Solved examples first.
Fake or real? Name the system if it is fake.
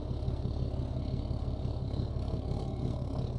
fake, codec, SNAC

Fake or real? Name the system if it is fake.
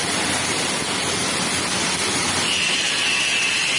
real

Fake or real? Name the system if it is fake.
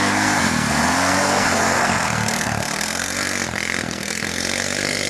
fake, codec, SNAC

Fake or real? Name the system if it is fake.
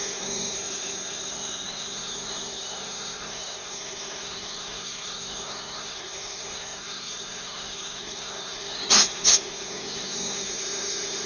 fake, codec, SNAC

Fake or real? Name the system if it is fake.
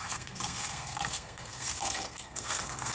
fake, codec, SNAC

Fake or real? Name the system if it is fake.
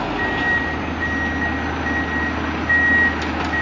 real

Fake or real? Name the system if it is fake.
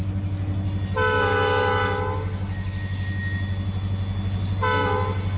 real